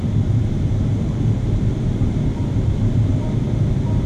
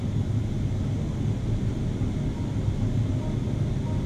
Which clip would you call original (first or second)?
second